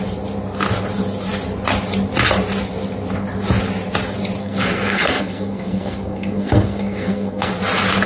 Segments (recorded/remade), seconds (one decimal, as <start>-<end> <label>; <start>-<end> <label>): 0.0-4.4 recorded; 4.4-7.5 remade; 7.5-8.1 recorded